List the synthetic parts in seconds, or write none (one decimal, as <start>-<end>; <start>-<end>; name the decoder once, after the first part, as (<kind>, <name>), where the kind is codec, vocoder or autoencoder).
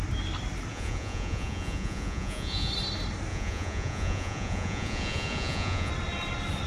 0.7-2.7 (vocoder, Vocos); 3.3-5.9